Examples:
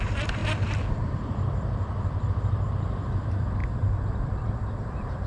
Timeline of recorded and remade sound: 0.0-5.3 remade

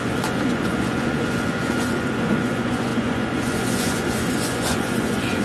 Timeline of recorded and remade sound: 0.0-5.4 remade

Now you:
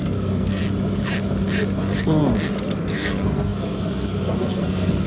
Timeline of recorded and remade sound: 0.0-0.6 remade; 0.6-1.8 recorded; 1.8-2.2 remade; 2.2-2.8 recorded; 2.8-5.1 remade